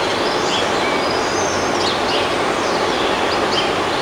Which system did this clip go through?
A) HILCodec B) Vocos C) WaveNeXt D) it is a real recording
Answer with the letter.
D